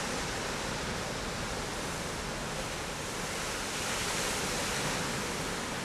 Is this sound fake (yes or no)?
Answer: no